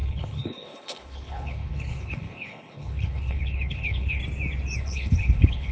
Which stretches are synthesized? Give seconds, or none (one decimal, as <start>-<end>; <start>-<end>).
0.0-4.2; 4.8-5.7